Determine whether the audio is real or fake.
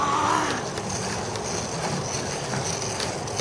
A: real